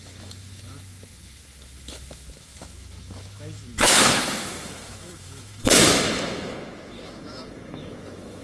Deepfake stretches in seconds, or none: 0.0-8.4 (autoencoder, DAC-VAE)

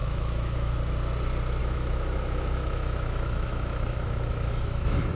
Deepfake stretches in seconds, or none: 0.0-0.8 (autoencoder, DAC-VAE); 1.6-5.1